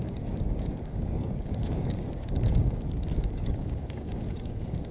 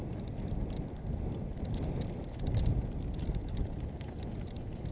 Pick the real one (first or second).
second